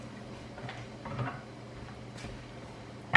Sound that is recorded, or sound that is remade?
recorded